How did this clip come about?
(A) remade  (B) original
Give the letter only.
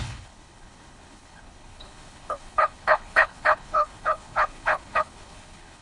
A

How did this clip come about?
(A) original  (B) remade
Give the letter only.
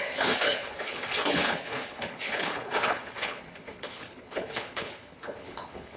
B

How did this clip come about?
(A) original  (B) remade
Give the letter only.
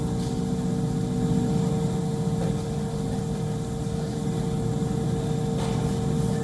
A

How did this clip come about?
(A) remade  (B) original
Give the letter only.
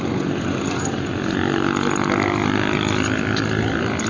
B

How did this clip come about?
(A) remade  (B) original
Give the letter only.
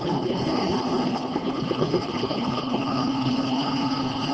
A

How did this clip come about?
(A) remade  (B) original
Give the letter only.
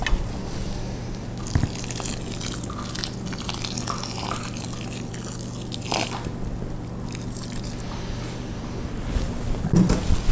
B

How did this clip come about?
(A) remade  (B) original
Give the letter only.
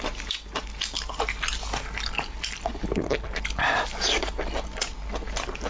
B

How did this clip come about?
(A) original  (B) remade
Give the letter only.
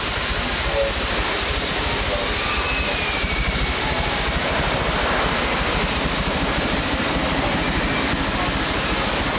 A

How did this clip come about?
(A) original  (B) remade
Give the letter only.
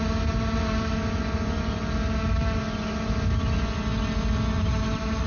A